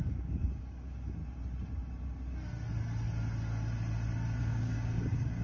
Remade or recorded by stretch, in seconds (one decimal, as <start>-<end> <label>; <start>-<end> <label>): 0.0-1.2 remade; 1.2-4.4 recorded; 4.4-5.4 remade